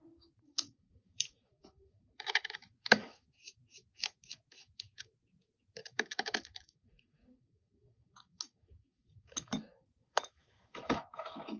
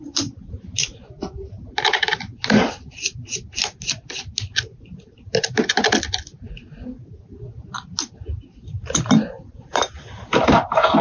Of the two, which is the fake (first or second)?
first